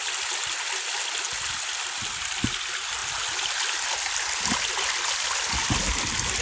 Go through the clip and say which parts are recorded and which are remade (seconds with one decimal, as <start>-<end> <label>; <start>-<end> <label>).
0.0-6.4 recorded